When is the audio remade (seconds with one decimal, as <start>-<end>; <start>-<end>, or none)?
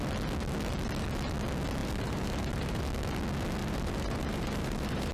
1.8-2.8; 3.6-5.1